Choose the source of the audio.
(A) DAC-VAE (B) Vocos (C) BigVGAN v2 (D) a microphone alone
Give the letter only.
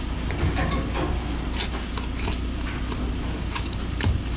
D